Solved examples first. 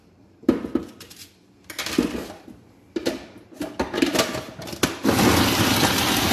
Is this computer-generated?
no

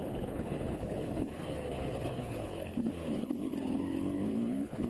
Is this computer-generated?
yes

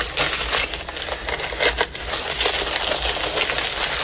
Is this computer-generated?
no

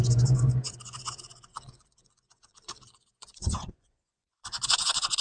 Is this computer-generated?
yes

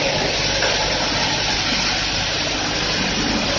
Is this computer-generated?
no